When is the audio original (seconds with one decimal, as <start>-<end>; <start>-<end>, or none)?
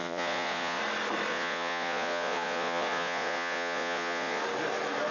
0.8-1.3; 4.4-5.1